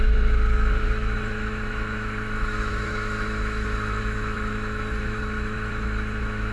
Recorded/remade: remade